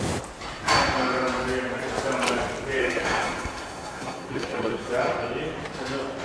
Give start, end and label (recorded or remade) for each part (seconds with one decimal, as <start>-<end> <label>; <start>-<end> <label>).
0.0-2.8 recorded; 2.8-4.9 remade; 4.9-6.2 recorded